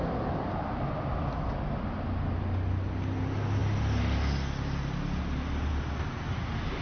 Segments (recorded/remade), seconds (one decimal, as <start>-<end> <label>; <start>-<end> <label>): 0.0-6.8 recorded